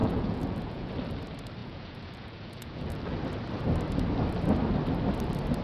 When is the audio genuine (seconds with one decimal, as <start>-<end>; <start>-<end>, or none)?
0.9-1.6; 3.0-5.6